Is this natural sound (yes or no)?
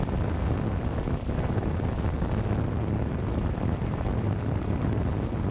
yes